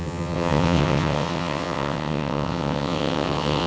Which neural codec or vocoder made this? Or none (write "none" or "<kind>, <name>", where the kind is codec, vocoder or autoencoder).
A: vocoder, WaveNeXt